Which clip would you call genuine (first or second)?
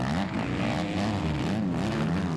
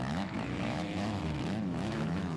first